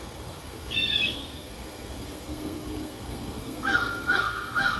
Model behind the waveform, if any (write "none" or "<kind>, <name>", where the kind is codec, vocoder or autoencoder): codec, SNAC